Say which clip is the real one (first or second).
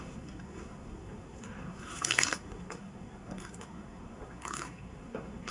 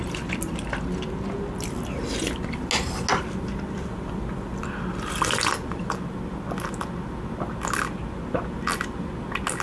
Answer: second